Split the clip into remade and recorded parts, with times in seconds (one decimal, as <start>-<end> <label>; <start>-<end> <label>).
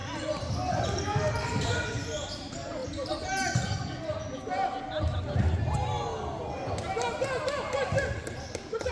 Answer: 0.0-8.9 recorded